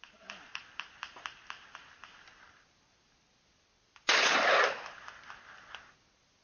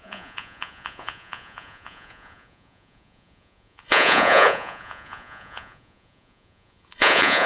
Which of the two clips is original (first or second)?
first